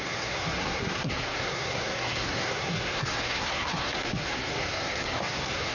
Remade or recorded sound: remade